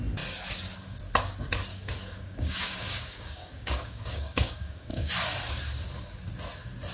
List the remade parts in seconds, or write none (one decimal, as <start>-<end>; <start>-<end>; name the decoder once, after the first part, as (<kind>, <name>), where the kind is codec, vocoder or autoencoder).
1.7-5.1 (codec, DAC)